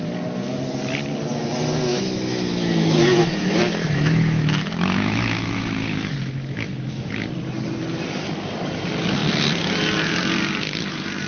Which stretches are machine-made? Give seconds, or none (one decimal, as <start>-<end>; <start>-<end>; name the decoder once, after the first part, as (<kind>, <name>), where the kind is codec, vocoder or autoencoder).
1.9-3.0 (autoencoder, DAC-VAE); 3.4-7.1